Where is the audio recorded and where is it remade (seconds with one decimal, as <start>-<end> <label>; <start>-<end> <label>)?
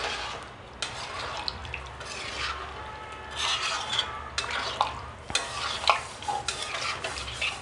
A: 0.0-7.6 recorded